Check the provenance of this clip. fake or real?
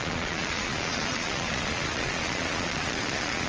fake